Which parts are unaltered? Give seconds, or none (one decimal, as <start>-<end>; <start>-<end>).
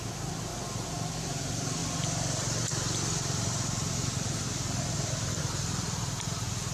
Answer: 0.0-6.7